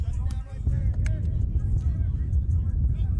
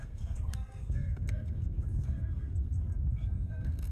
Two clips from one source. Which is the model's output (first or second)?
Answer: second